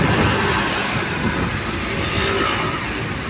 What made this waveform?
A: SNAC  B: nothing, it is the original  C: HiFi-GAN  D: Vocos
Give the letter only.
B